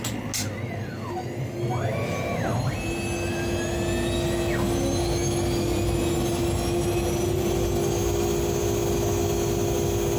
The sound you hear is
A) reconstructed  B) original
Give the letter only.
B